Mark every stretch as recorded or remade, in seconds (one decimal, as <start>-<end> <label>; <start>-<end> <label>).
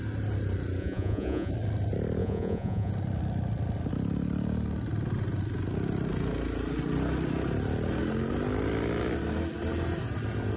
0.0-0.8 recorded; 0.8-1.5 remade; 1.5-2.2 recorded; 2.2-2.9 remade; 2.9-10.6 recorded